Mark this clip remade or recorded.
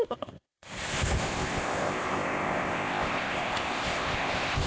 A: remade